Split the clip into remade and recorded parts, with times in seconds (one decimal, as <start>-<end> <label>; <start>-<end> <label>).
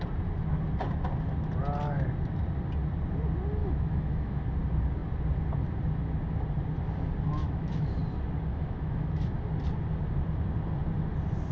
0.0-3.6 recorded; 3.6-4.4 remade; 4.4-7.3 recorded; 7.3-8.0 remade; 8.0-8.5 recorded; 8.5-9.4 remade; 9.4-11.5 recorded